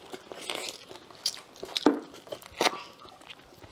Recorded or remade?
recorded